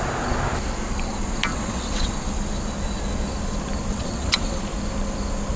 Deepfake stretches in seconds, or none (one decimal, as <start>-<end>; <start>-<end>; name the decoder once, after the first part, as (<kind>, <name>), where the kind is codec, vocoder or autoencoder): 1.5-2.1 (vocoder, WaveNeXt); 3.9-4.6